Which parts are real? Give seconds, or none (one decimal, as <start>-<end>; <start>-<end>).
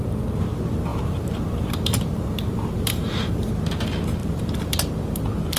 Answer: 0.0-0.9; 3.5-4.2; 4.9-5.6